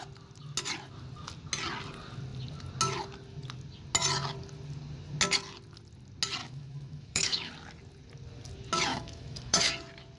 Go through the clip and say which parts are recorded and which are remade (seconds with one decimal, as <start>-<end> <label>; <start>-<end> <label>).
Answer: 0.0-6.4 recorded; 6.4-7.5 remade; 7.5-8.9 recorded; 8.9-9.7 remade; 9.7-10.2 recorded